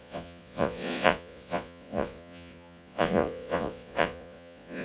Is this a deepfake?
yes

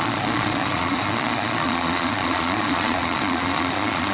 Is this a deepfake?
yes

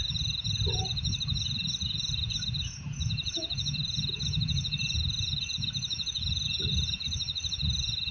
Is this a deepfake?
yes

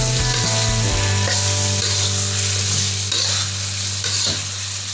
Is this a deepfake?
no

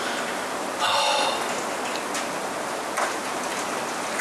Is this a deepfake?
no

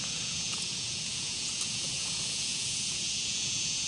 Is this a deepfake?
yes